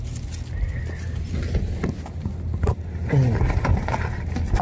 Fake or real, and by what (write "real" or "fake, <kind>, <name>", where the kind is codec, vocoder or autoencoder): real